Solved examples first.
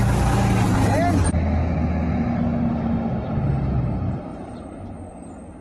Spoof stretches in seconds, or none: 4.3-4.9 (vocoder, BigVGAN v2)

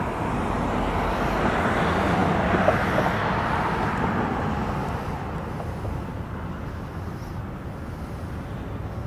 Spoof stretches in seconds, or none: none

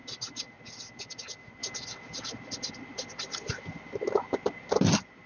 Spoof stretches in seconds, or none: none

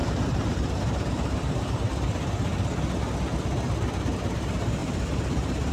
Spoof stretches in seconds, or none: 0.0-1.8 (vocoder, BigVGAN v2); 4.8-5.7

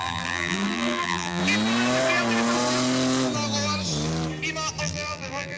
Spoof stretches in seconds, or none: 0.0-1.4 (vocoder, BigVGAN v2); 4.8-5.6

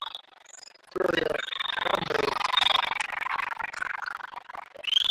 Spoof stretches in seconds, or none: none

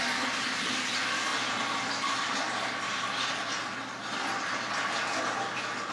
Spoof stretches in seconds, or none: none